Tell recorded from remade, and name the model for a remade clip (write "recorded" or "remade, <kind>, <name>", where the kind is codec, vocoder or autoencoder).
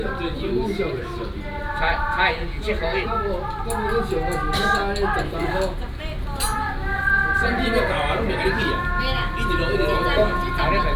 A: recorded